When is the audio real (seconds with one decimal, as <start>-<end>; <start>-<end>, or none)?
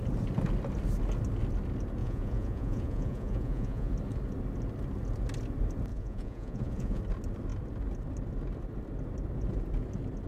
0.0-2.0; 3.9-5.9; 7.0-10.3